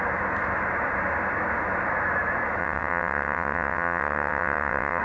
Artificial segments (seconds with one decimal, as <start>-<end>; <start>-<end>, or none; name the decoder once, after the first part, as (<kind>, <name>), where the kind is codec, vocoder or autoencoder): 2.6-5.0 (vocoder, WaveNeXt)

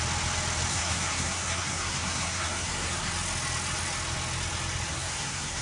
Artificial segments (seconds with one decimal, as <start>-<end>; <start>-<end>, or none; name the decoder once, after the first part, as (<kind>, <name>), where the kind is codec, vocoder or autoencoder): 0.7-3.1 (codec, SNAC); 4.9-5.6

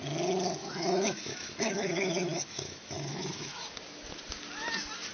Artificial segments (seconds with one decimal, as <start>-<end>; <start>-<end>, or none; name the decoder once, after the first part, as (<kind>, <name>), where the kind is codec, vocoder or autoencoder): 0.6-3.7 (autoencoder, DAC-VAE)

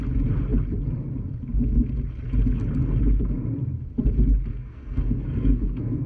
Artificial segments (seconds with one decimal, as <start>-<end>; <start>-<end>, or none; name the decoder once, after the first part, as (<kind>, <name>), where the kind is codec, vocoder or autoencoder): 4.5-6.1 (codec, SNAC)

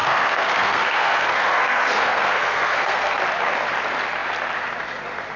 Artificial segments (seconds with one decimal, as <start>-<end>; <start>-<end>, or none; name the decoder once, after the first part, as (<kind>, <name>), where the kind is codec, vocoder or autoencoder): 0.0-3.2 (codec, SNAC)